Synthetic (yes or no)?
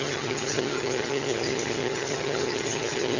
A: yes